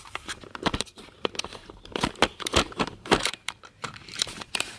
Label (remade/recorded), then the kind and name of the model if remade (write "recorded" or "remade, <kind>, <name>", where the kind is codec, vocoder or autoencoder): remade, vocoder, BigVGAN v2